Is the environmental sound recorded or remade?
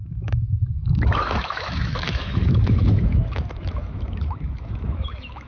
remade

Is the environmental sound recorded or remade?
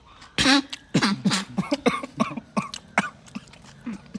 recorded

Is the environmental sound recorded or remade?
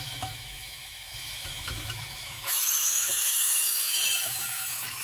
remade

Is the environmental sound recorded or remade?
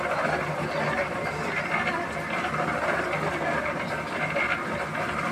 recorded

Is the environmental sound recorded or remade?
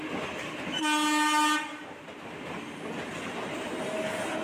recorded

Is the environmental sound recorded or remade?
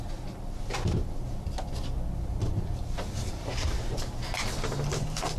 recorded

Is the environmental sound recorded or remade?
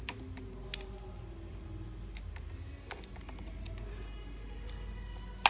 recorded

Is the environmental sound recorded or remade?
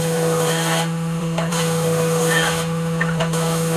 remade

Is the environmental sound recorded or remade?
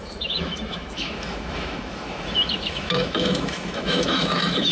remade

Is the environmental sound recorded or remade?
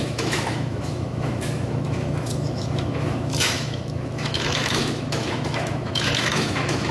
remade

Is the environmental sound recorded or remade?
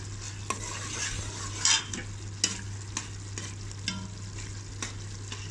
recorded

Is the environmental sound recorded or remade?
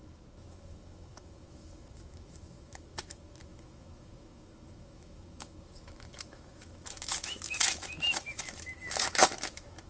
remade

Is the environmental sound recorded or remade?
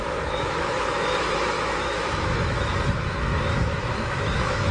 remade